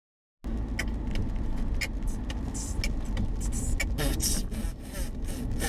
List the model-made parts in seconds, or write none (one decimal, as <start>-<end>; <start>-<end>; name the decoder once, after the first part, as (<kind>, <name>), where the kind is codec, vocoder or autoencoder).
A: none

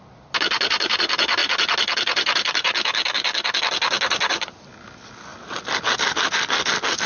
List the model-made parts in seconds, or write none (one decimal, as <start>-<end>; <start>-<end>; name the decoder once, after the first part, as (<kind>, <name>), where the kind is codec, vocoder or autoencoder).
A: none

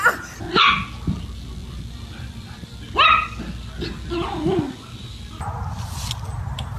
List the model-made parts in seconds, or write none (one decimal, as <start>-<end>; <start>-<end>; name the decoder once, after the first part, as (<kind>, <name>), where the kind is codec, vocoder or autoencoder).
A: 1.6-2.8 (vocoder, BigVGAN v2)

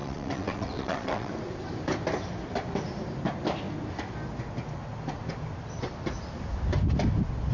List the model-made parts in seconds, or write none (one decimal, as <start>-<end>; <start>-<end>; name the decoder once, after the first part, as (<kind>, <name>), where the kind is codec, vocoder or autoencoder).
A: 0.0-1.3 (vocoder, WaveNeXt)

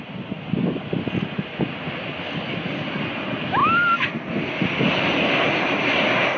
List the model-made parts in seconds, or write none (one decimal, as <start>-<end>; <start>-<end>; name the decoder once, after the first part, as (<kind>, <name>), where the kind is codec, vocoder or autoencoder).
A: none